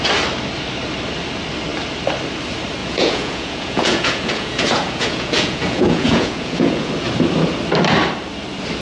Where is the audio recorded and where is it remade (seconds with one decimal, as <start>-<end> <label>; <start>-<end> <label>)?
0.0-2.8 recorded; 2.8-6.9 remade; 6.9-8.8 recorded